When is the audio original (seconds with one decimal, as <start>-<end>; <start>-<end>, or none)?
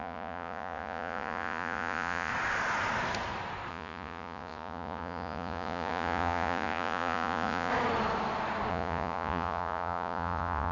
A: 2.3-3.7; 7.7-8.7